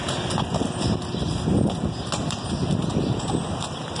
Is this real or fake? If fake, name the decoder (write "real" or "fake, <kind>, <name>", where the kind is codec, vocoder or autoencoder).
real